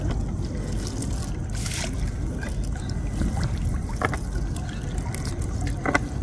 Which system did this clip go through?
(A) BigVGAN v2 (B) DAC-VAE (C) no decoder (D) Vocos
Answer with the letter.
C